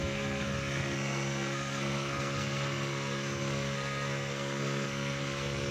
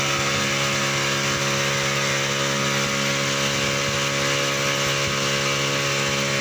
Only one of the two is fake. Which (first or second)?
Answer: first